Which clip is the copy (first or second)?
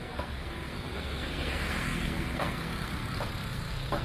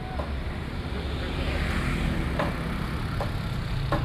first